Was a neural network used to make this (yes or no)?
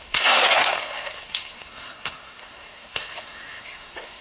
yes